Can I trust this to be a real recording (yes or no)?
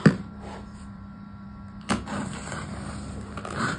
no